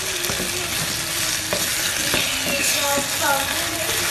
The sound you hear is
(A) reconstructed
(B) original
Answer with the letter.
B